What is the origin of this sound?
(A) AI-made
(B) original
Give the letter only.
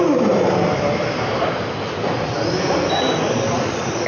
A